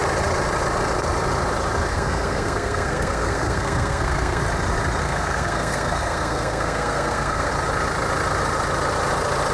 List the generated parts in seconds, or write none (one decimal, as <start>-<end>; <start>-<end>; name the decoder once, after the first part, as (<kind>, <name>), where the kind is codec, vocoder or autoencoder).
1.9-4.4 (codec, SNAC); 5.0-7.5